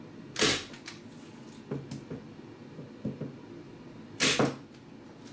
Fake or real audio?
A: real